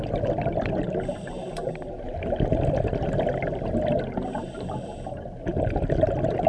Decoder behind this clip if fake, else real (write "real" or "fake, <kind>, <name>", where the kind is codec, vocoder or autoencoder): real